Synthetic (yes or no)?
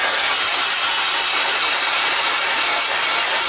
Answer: no